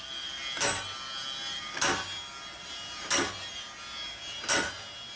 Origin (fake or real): real